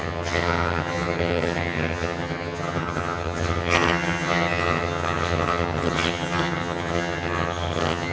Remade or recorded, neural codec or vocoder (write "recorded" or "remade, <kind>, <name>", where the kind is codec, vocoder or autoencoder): remade, vocoder, HiFi-GAN